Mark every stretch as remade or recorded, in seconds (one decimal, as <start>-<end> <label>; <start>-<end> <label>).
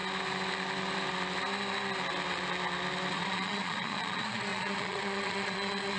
0.0-3.1 recorded; 3.1-6.0 remade